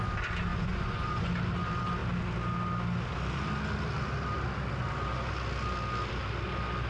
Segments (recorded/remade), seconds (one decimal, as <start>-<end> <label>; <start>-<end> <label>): 0.0-0.5 recorded; 0.5-1.3 remade; 1.3-6.9 recorded